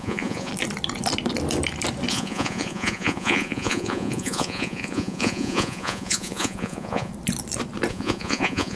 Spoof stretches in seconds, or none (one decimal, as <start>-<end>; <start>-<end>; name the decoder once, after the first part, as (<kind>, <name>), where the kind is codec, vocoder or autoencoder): 0.0-0.5 (vocoder, Vocos); 2.1-7.1; 7.9-8.8